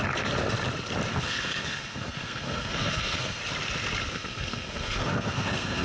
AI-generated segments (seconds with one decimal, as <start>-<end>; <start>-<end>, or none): 1.1-3.4; 4.1-5.8